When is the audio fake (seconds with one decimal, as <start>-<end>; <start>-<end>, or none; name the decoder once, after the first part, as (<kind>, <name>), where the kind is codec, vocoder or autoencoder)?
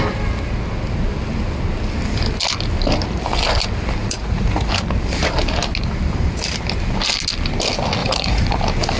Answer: 4.0-4.7 (vocoder, Vocos); 8.0-8.6